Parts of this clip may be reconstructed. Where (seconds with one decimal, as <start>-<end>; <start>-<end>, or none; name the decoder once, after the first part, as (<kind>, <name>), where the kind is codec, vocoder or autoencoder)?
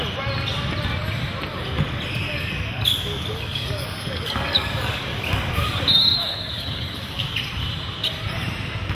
2.2-7.4 (codec, DAC)